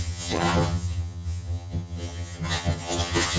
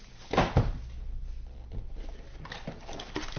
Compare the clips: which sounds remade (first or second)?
first